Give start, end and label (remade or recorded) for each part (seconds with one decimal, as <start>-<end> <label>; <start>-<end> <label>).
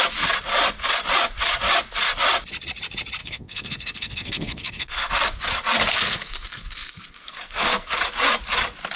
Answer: 0.0-3.2 recorded; 3.2-5.1 remade; 5.1-5.9 recorded; 5.9-8.0 remade; 8.0-9.0 recorded